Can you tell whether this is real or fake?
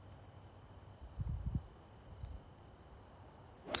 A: real